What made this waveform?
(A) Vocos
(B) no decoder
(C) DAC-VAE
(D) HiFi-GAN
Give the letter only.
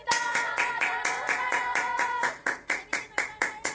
A